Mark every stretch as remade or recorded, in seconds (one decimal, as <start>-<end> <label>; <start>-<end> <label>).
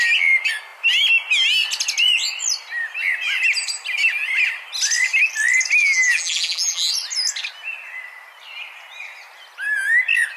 0.0-5.8 recorded; 5.8-6.9 remade; 6.9-10.4 recorded